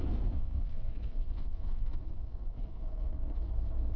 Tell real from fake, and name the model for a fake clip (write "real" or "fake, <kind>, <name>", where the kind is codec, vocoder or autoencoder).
fake, codec, SNAC